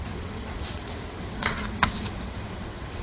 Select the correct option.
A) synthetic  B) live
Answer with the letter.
A